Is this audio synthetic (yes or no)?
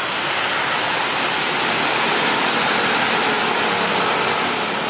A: no